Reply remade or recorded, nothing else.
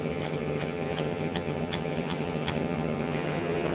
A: remade